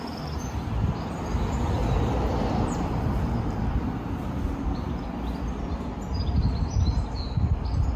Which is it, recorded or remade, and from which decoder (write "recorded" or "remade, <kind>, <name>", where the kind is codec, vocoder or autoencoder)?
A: recorded